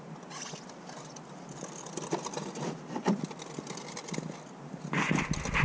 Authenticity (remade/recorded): recorded